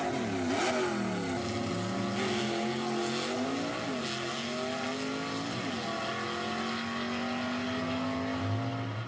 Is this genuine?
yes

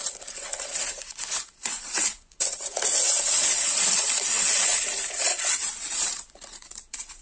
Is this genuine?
no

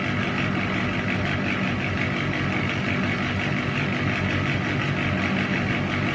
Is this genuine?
yes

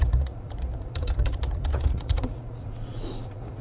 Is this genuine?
no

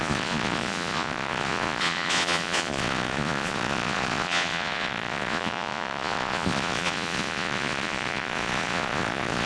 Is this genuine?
no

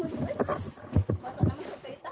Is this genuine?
yes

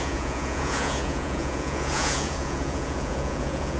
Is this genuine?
no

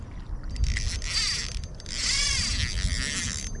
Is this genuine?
yes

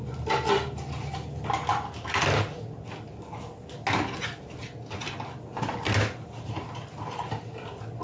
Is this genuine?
yes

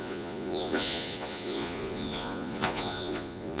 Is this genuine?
no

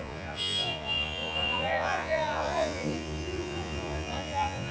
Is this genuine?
no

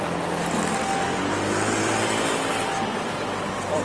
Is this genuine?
yes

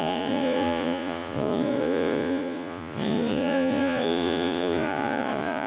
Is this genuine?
no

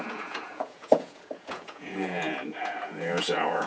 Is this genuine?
no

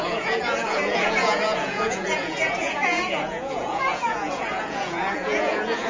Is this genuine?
no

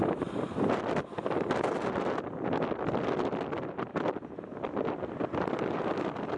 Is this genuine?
yes